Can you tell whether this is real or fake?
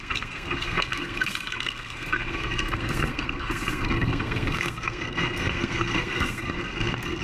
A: fake